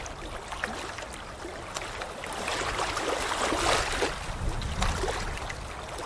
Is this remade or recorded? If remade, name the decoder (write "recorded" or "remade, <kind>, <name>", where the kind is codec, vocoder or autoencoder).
recorded